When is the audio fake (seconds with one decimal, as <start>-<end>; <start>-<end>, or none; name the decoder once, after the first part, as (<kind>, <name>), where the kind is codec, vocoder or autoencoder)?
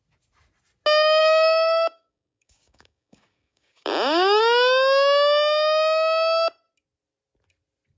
1.2-4.4 (codec, DAC)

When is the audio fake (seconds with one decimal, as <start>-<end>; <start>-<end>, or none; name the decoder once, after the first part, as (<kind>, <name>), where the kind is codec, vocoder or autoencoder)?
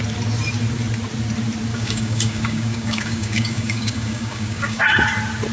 1.7-4.8 (codec, DAC)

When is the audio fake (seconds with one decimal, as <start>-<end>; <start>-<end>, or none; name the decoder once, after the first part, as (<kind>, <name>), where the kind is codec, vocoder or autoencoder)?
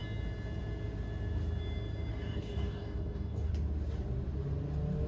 2.1-3.5 (codec, DAC)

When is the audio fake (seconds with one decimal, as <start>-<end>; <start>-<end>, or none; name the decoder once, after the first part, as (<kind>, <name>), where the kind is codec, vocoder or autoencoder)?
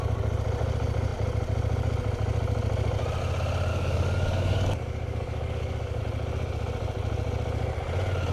3.7-6.0 (codec, DAC)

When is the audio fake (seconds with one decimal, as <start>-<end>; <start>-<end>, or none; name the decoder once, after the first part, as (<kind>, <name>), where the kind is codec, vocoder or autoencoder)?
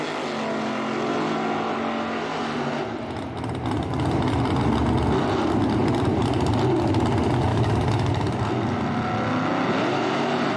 7.5-8.1 (codec, DAC)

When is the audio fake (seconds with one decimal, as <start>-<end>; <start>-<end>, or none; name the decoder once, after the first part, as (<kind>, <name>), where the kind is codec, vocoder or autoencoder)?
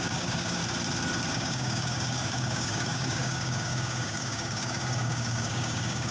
0.0-0.6 (codec, DAC); 1.3-6.1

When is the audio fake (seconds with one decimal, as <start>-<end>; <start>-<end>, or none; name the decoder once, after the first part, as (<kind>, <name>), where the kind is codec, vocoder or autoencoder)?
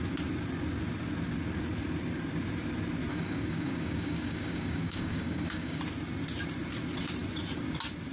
3.1-5.8 (codec, DAC)